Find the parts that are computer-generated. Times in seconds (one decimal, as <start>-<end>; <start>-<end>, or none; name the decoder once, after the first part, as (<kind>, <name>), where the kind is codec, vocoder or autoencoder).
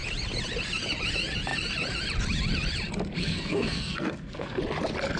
3.2-4.6 (codec, SNAC)